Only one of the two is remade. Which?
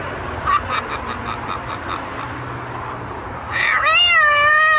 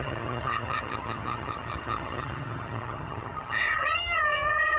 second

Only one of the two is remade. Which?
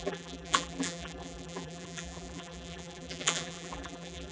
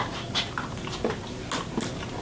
first